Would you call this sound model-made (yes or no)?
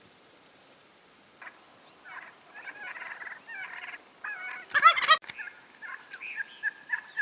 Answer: no